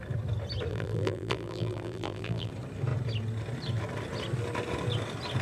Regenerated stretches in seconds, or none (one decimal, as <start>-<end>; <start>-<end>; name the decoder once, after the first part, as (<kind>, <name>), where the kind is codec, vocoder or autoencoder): 0.7-2.5 (vocoder, BigVGAN v2)